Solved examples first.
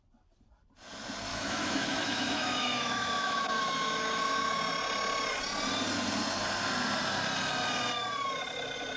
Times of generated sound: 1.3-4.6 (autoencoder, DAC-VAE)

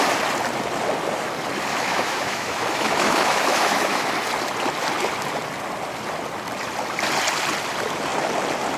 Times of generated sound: 1.7-4.1 (autoencoder, DAC-VAE)

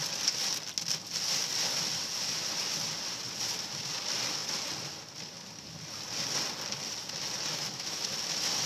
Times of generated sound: 7.5-8.0 (autoencoder, DAC-VAE)